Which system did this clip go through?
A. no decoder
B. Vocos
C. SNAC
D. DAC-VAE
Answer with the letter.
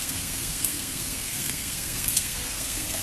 C